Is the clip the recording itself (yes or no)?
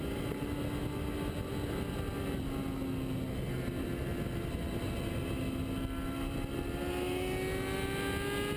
yes